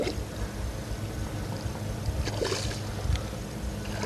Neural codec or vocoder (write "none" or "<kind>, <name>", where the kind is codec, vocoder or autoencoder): none